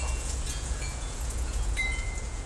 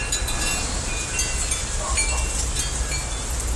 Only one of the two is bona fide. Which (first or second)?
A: second